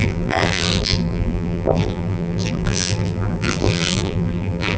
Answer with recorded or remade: remade